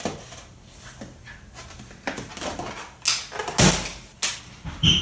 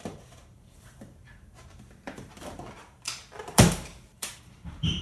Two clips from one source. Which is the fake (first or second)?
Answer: second